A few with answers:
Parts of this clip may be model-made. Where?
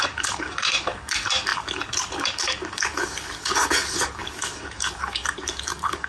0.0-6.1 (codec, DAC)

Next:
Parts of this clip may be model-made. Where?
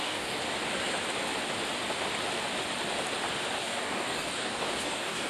0.0-0.4 (codec, DAC); 3.6-5.3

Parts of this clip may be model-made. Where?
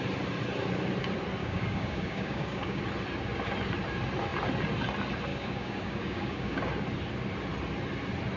1.4-2.8 (codec, DAC); 5.3-6.6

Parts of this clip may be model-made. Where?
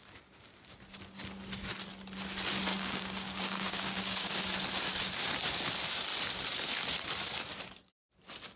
2.7-4.4 (codec, DAC)